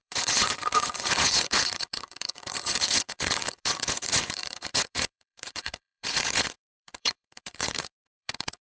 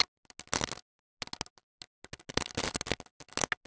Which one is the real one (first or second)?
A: second